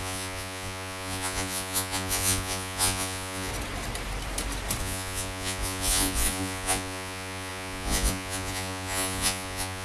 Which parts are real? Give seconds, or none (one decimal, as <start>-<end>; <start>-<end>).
3.5-4.8